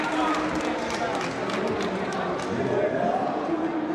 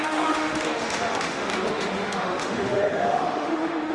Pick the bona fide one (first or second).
first